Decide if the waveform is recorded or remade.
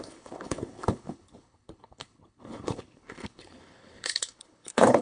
remade